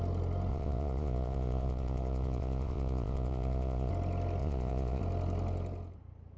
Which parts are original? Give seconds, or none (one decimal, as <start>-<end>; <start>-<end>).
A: 0.0-0.5; 3.9-4.4; 5.0-6.4

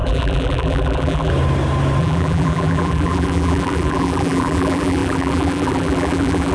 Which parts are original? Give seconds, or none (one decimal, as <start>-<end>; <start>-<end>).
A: 1.3-2.0

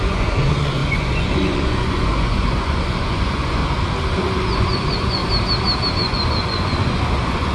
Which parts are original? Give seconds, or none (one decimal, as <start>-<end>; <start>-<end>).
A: 3.6-4.1; 5.2-5.9

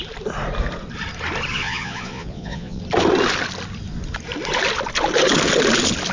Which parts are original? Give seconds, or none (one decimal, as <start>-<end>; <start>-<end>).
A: 0.0-1.5; 2.8-6.1

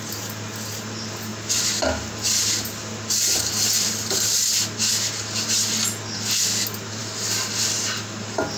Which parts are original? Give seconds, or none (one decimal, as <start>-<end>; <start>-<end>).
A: 0.0-8.6

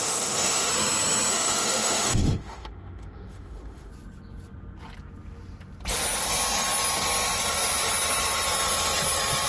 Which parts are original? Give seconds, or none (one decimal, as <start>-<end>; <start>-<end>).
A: 0.7-1.3; 3.9-9.5

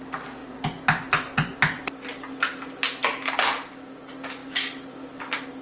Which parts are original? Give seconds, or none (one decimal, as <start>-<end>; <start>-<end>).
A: 0.0-0.4; 1.9-5.6